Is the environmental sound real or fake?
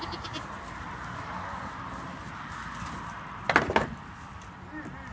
real